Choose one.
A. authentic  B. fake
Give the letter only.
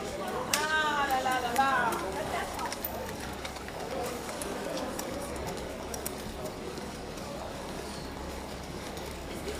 B